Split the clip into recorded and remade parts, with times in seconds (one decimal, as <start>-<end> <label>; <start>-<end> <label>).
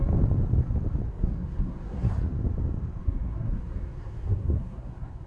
0.0-1.1 recorded; 1.1-2.1 remade; 2.1-3.0 recorded; 3.0-5.3 remade